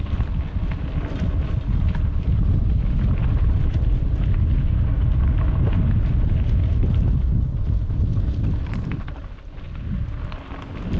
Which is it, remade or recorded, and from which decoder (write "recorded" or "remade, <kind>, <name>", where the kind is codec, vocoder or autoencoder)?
recorded